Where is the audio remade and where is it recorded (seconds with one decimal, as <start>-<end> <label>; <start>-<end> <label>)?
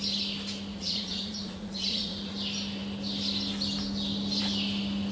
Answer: 0.0-0.7 recorded; 0.7-2.3 remade; 2.3-5.1 recorded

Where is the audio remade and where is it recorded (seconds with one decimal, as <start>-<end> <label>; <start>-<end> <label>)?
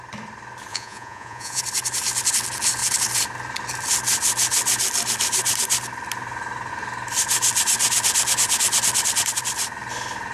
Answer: 0.0-0.7 recorded; 0.7-1.6 remade; 1.6-10.3 recorded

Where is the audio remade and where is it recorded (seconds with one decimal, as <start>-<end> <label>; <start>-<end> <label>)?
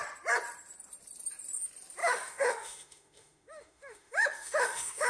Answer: 0.0-2.0 recorded; 2.0-5.1 remade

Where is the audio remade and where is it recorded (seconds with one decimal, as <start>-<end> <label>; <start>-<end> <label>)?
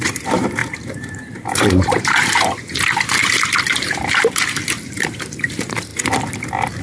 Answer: 0.0-3.2 remade; 3.2-3.7 recorded; 3.7-5.9 remade; 5.9-6.8 recorded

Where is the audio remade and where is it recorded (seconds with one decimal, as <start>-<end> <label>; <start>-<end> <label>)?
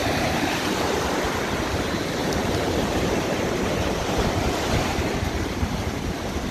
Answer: 0.0-1.3 remade; 1.3-2.2 recorded; 2.2-6.0 remade; 6.0-6.5 recorded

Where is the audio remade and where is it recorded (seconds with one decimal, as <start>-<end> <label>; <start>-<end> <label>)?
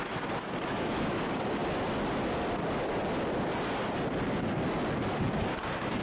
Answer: 0.0-1.6 remade; 1.6-5.2 recorded; 5.2-6.0 remade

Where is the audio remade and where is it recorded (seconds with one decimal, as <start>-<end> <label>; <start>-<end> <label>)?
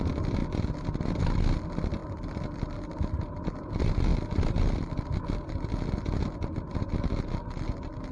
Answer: 0.0-8.1 recorded